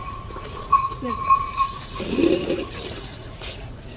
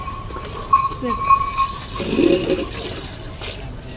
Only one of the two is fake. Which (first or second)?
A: first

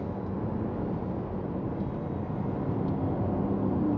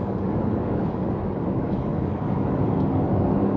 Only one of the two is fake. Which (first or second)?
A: second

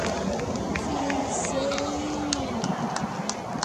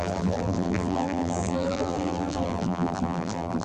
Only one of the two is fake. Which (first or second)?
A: second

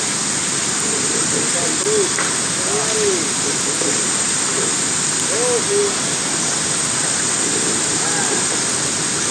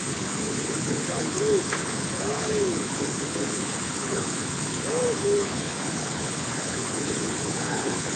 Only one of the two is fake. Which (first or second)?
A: second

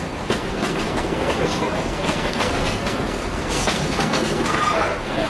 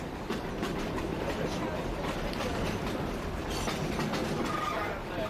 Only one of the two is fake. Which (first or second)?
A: first